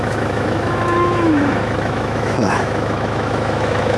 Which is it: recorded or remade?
remade